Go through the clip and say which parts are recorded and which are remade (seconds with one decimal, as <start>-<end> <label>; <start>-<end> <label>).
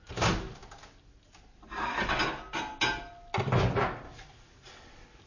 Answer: 0.0-5.3 recorded